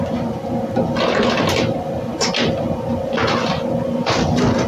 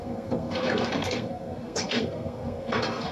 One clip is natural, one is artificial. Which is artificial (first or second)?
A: second